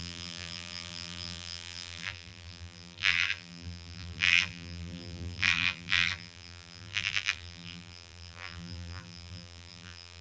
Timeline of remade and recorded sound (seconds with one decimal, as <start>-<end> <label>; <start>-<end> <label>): 0.0-10.2 remade